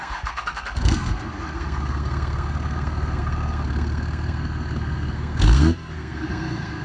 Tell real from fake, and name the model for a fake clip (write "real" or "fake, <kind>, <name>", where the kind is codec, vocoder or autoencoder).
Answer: fake, codec, SNAC